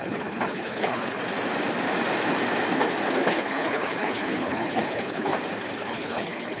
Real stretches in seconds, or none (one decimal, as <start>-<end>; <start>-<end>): 1.2-3.3; 5.3-5.8